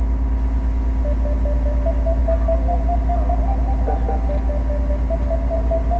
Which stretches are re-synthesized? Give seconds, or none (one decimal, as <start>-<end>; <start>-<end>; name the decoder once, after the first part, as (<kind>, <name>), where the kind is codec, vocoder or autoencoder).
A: none